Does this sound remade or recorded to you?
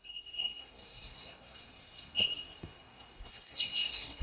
remade